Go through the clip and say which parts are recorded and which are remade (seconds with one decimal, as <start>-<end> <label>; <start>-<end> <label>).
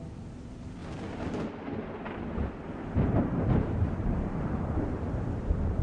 0.0-0.8 remade; 0.8-3.0 recorded; 3.0-5.8 remade